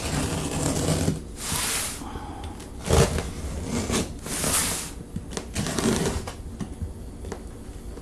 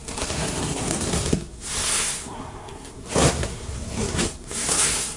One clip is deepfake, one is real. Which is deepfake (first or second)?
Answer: second